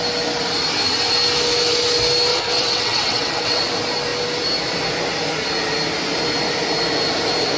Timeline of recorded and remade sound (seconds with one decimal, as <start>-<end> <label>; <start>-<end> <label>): 0.0-2.3 recorded; 2.3-3.6 remade; 3.6-7.6 recorded